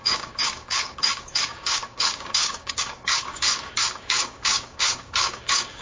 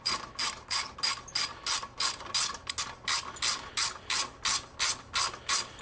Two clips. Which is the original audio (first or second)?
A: second